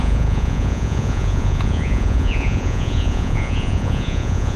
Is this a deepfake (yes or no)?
yes